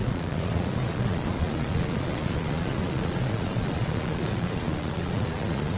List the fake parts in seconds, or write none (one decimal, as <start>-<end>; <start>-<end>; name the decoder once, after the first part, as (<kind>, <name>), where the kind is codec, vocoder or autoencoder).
0.0-5.8 (vocoder, Vocos)